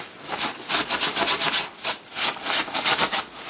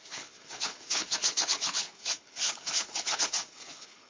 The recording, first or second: first